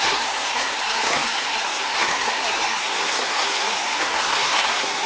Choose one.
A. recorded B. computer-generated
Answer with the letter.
B